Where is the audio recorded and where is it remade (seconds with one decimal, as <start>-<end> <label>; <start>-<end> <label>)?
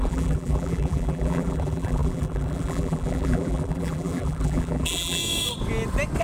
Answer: 0.0-5.2 remade; 5.2-6.2 recorded